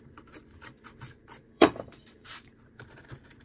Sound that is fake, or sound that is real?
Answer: fake